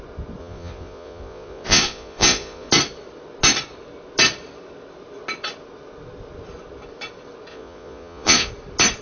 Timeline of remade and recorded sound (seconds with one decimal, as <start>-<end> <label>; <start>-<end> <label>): 0.0-0.4 recorded; 0.4-2.7 remade; 2.7-7.5 recorded; 7.5-8.5 remade; 8.5-9.0 recorded